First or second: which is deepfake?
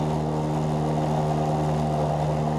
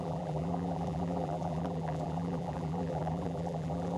second